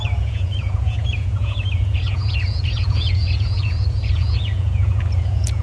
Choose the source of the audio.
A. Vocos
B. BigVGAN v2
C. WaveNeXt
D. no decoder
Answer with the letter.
A